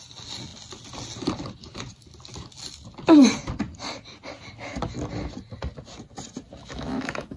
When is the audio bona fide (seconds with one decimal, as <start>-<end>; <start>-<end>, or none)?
0.0-6.6